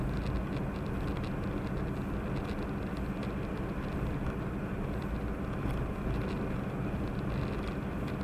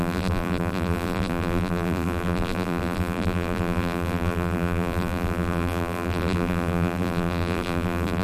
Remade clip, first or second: second